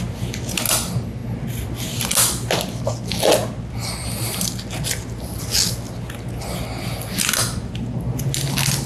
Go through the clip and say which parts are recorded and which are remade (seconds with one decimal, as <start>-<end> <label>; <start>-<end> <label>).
0.0-8.9 recorded